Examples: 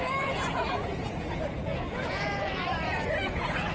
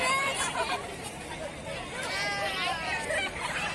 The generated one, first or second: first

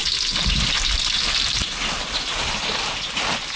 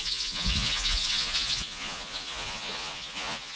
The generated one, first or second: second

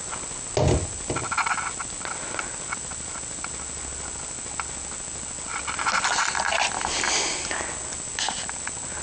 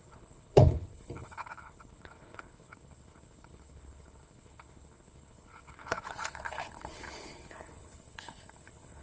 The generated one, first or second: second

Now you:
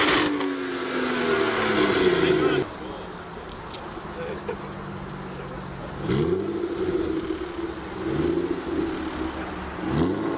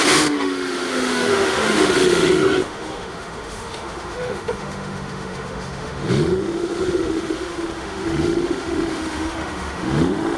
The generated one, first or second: second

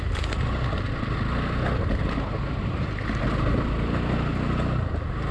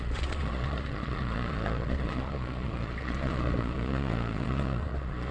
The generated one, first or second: second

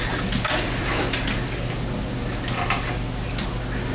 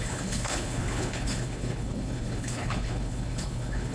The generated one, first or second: second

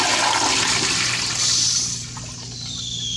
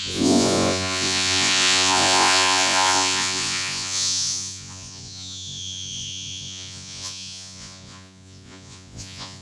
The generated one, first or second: second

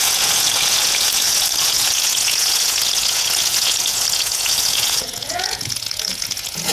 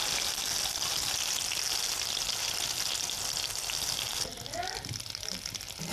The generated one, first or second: first